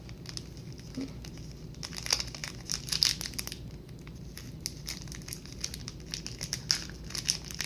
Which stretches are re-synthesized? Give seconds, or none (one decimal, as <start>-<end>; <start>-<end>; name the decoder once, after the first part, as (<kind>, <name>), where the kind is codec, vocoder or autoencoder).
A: none